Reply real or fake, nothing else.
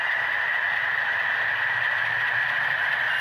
real